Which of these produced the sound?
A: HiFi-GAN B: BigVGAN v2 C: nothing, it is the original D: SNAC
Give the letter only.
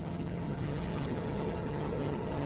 A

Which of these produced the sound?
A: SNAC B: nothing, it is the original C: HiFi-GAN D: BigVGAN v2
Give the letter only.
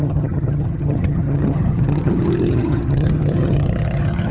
C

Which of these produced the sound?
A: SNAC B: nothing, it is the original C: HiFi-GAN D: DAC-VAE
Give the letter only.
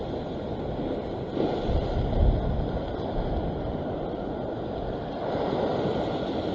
B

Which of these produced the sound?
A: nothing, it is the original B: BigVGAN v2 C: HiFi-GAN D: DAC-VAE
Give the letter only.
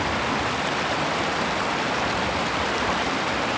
A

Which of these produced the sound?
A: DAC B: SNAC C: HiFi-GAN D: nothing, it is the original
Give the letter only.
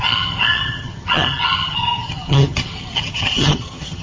C